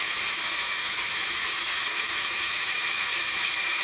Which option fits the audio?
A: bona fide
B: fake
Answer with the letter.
B